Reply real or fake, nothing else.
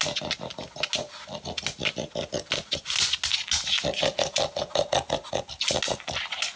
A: real